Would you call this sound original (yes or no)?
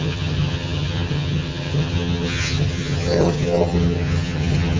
no